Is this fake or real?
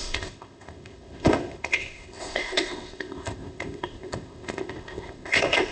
fake